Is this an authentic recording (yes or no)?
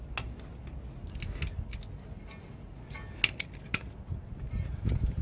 yes